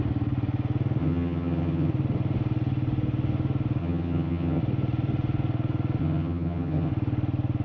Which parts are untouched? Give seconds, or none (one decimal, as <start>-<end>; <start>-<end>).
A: 0.0-1.0; 1.9-3.8; 4.6-6.0; 6.9-7.6